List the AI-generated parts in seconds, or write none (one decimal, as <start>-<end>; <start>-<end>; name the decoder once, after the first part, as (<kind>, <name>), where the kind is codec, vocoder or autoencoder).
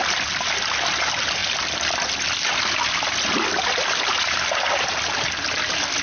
none